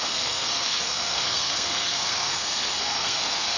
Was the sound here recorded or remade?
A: remade